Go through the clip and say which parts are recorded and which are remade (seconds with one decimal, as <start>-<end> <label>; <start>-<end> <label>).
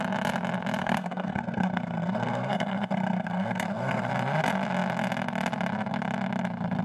0.0-0.8 recorded; 0.8-4.1 remade; 4.1-6.8 recorded